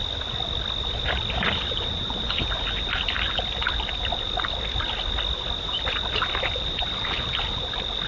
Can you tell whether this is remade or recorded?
recorded